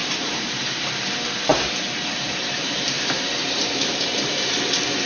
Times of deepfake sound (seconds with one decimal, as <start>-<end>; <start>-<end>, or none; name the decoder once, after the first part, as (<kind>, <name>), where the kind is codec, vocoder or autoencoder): 0.0-0.7 (vocoder, BigVGAN v2); 1.5-4.6